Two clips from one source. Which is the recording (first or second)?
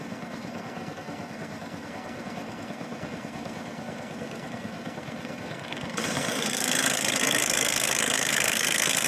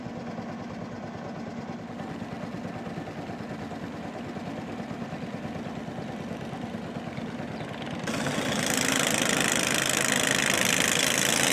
second